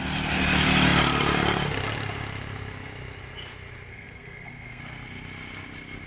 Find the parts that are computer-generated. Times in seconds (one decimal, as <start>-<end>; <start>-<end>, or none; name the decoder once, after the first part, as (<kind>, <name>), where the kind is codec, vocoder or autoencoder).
3.9-4.8 (codec, SNAC)